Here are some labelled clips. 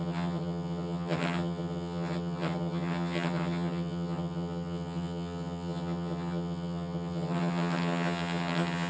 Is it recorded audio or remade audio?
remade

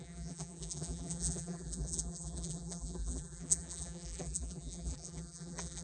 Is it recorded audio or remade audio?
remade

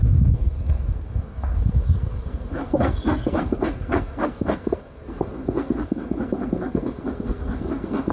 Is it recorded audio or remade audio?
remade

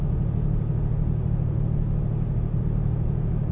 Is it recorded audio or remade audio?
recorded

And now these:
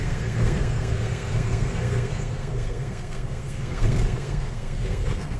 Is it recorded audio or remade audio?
remade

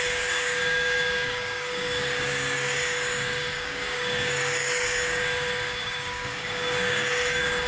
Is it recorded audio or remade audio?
remade